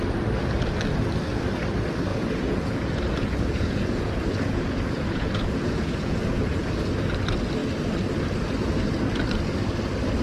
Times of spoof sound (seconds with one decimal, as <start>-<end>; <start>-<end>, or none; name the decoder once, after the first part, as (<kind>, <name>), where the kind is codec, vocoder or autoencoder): 2.1-6.7 (vocoder, Vocos)